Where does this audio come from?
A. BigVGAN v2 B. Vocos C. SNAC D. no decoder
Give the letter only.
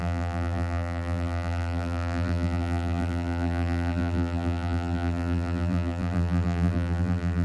A